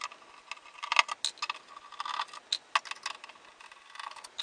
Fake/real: real